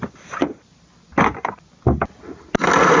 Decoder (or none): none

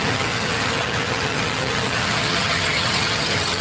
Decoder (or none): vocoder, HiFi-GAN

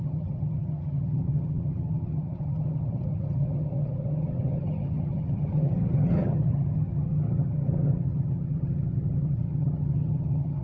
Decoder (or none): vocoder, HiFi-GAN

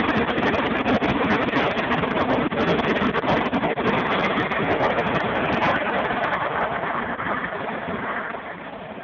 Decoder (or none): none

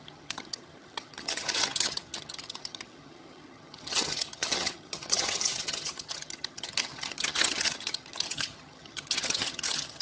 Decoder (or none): vocoder, HiFi-GAN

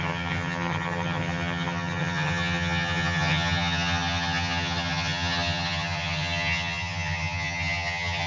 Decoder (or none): vocoder, HiFi-GAN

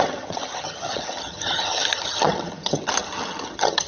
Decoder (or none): vocoder, HiFi-GAN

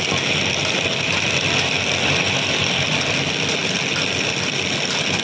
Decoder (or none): none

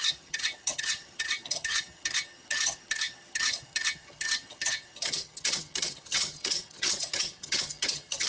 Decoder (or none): vocoder, HiFi-GAN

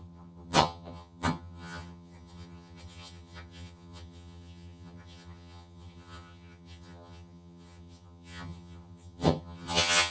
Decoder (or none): vocoder, HiFi-GAN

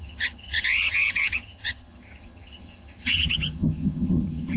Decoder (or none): vocoder, HiFi-GAN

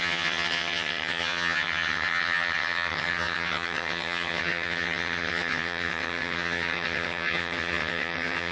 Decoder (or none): vocoder, HiFi-GAN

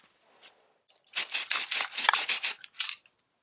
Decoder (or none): none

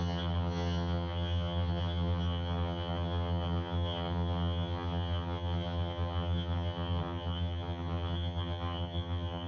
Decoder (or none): vocoder, HiFi-GAN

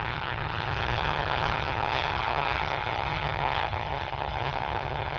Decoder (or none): vocoder, HiFi-GAN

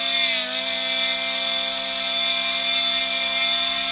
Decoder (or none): none